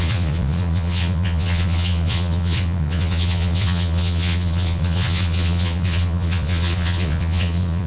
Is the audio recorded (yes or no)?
no